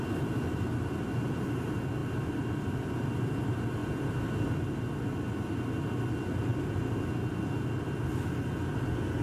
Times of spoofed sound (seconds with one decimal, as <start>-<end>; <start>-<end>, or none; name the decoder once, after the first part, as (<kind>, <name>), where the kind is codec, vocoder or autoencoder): none